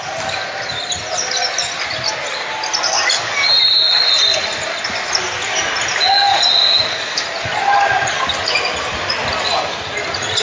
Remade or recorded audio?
recorded